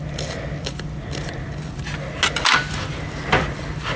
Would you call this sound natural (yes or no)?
yes